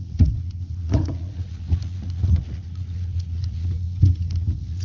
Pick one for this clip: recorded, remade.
remade